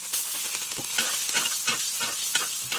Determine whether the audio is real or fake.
real